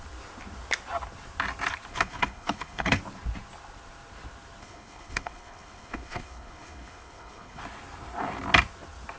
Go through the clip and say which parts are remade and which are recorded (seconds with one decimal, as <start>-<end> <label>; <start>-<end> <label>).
0.0-1.9 recorded; 1.9-3.0 remade; 3.0-4.6 recorded; 4.6-7.6 remade; 7.6-9.2 recorded